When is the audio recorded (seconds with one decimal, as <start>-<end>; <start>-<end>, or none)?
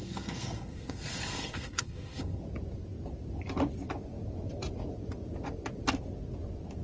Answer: 2.4-6.8